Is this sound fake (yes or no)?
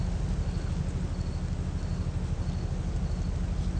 no